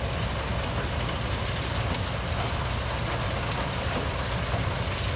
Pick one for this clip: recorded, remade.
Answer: remade